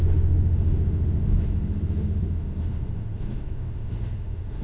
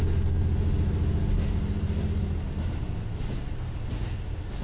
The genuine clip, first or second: second